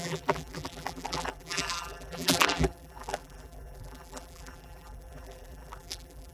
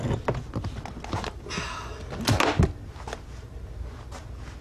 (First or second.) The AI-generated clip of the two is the first